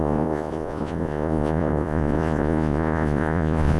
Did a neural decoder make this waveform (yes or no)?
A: yes